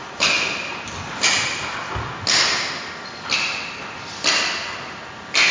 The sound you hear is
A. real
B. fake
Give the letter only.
A